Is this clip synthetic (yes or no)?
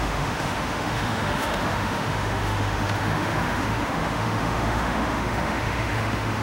yes